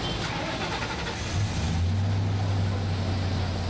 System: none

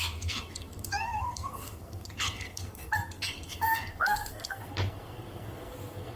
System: codec, SNAC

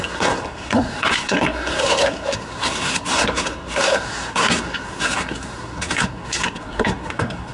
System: codec, SNAC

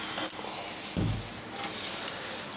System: none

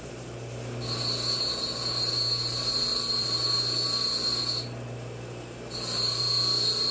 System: none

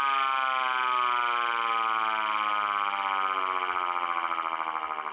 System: none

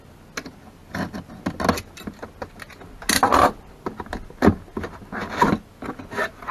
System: none